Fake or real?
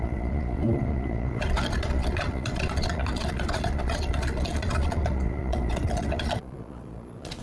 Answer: fake